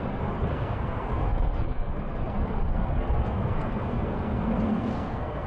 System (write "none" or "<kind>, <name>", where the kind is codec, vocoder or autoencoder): codec, SNAC